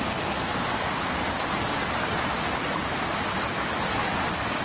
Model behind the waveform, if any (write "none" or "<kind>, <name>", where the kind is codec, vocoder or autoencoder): none